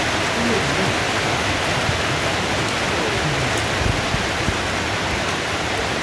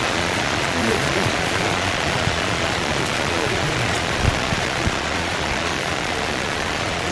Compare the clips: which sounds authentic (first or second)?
first